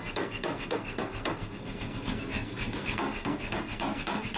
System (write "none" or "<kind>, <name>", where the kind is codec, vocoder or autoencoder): codec, SNAC